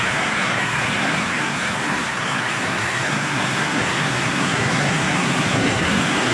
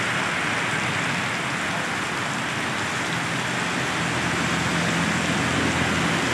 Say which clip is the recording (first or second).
second